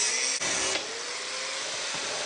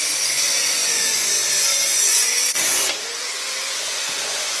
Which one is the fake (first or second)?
second